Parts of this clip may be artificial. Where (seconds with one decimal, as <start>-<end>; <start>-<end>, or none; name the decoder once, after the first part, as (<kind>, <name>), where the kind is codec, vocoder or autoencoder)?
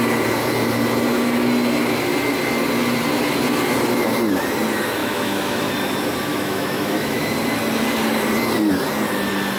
5.0-5.7 (autoencoder, DAC-VAE); 6.3-7.3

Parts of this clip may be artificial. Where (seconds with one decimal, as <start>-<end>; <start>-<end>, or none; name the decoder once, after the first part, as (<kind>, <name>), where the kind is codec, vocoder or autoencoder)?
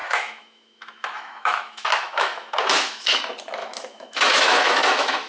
0.0-3.2 (autoencoder, DAC-VAE); 3.6-5.3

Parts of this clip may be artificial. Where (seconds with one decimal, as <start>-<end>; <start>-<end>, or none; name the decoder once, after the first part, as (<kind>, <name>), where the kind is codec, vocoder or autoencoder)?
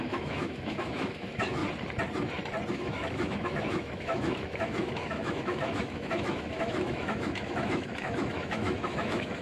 0.0-1.6 (autoencoder, DAC-VAE); 2.7-9.4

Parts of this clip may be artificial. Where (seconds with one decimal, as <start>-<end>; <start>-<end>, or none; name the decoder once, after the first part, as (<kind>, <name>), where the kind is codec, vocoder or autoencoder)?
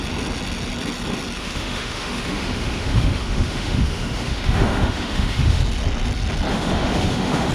1.4-5.6 (autoencoder, DAC-VAE); 6.5-7.5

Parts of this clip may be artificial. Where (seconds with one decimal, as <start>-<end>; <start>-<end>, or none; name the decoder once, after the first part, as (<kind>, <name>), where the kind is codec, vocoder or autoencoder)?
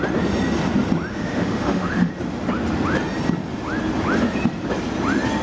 1.1-2.1 (autoencoder, DAC-VAE)